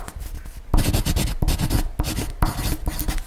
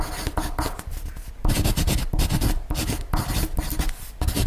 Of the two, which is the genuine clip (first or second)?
first